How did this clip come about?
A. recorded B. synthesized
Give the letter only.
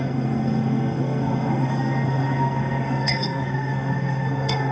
B